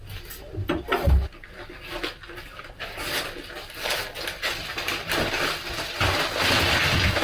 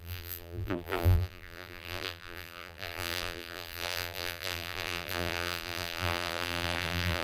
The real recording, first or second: first